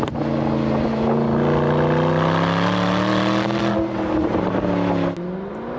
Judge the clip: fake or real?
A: real